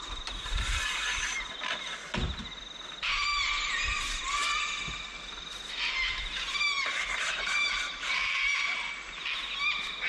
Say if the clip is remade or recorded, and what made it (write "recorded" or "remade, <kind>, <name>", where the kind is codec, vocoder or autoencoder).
recorded